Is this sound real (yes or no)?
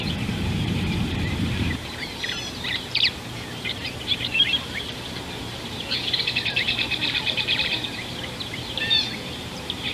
no